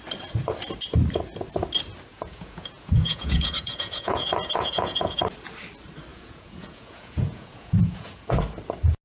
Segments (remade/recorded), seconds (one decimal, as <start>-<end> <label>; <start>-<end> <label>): 0.0-2.1 recorded; 2.1-5.2 remade; 5.2-6.1 recorded; 6.1-8.4 remade; 8.4-9.0 recorded